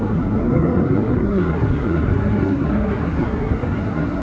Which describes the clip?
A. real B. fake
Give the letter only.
B